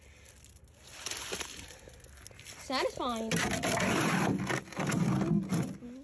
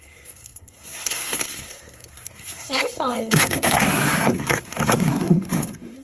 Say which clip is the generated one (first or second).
second